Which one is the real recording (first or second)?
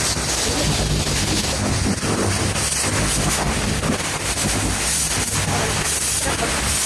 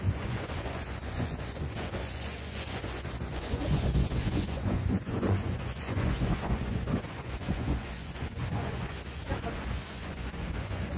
first